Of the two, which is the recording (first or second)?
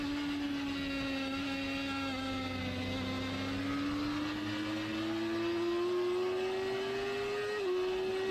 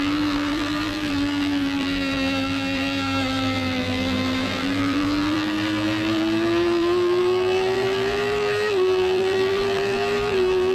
first